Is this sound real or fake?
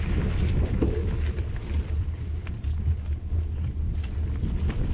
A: real